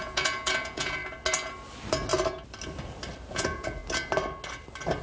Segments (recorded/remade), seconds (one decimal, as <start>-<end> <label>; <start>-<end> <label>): 0.0-1.0 remade; 1.0-3.3 recorded; 3.3-3.8 remade; 3.8-5.0 recorded